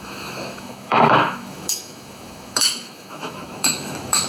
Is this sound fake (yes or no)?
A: yes